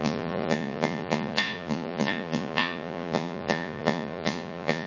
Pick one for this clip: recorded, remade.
remade